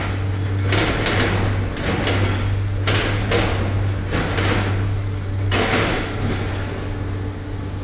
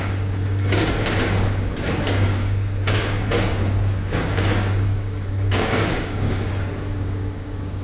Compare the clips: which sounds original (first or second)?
first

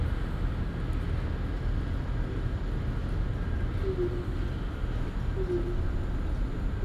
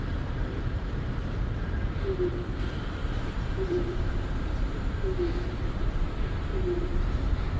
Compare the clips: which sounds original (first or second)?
first